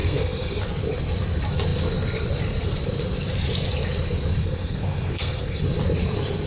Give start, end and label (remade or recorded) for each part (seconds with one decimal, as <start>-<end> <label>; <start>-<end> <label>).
0.0-0.6 remade; 0.6-4.4 recorded; 4.4-5.6 remade; 5.6-6.5 recorded